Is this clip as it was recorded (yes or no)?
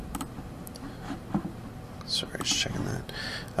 yes